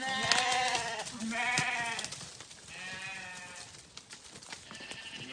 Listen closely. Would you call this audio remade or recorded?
recorded